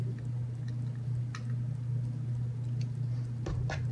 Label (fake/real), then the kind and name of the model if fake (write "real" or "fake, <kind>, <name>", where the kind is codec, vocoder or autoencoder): real